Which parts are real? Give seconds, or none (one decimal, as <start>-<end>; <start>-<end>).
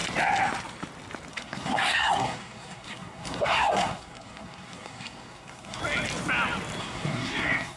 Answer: 0.0-1.3; 5.8-6.8